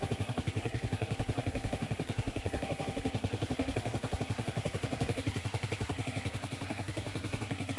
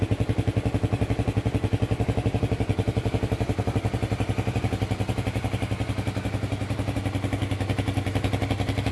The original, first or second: second